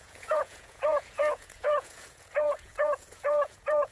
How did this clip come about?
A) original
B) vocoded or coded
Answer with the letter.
B